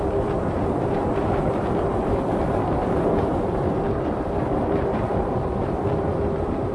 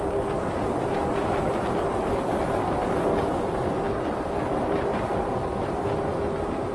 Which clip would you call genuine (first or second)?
second